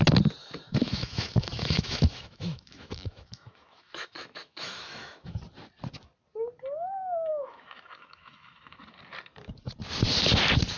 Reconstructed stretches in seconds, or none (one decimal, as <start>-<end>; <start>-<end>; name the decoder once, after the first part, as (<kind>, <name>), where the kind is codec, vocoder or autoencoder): 0.4-5.4 (autoencoder, DAC-VAE); 7.3-8.8